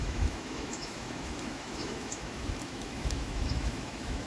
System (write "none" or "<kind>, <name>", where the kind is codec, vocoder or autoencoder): autoencoder, DAC-VAE